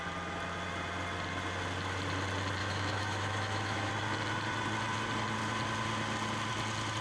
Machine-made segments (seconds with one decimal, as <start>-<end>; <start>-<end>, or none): 2.6-3.9